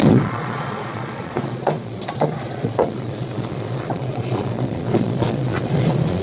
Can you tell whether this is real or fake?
fake